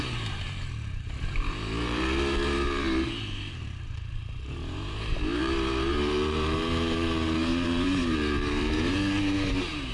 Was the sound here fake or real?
fake